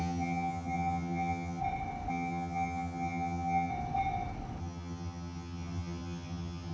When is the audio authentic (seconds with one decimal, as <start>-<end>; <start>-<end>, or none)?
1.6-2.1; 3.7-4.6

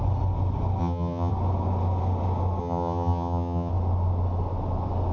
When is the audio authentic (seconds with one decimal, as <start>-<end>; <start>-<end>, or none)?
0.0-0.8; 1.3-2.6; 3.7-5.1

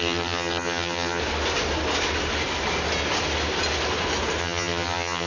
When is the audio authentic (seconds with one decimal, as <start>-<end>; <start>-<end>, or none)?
1.2-4.4

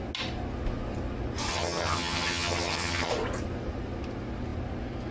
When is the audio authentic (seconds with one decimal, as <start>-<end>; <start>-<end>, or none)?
0.0-1.5; 3.1-5.1